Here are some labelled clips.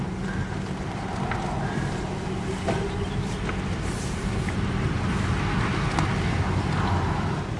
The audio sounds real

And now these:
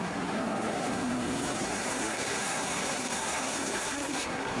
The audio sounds fake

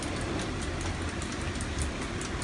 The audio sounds real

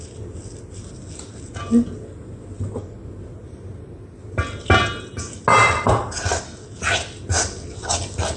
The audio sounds real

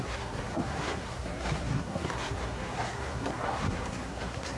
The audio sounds fake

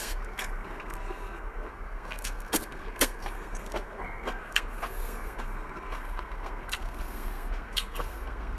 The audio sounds fake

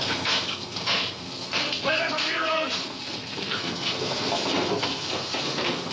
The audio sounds fake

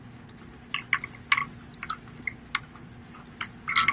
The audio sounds real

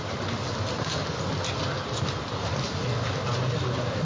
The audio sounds real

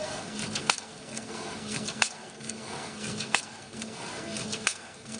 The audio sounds fake